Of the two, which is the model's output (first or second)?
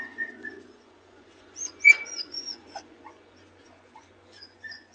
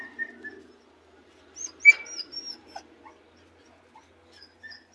first